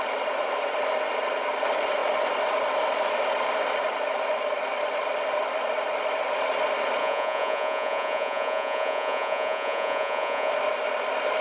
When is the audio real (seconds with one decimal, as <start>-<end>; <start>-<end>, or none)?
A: 0.0-7.0; 10.5-11.4